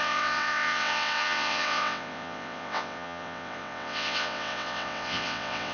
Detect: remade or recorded remade